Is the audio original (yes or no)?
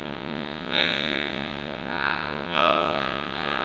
no